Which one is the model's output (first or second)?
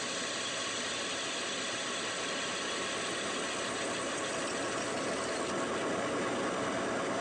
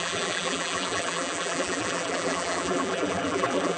second